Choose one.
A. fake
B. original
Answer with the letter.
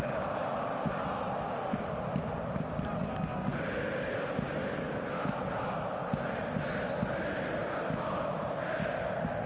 B